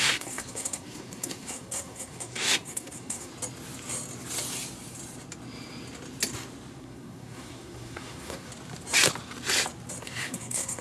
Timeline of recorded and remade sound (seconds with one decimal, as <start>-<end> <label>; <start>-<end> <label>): 0.0-3.3 remade; 3.3-6.8 recorded; 6.8-8.5 remade; 8.5-10.0 recorded; 10.0-10.8 remade